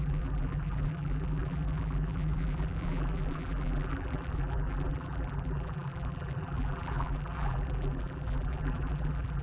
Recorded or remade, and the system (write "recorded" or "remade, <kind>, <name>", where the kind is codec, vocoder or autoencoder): remade, vocoder, BigVGAN v2